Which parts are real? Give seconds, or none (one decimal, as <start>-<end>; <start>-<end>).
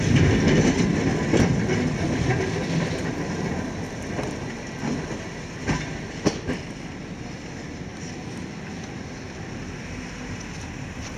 0.0-11.2